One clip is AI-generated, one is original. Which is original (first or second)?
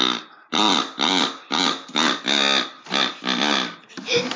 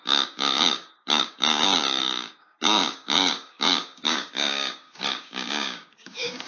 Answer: first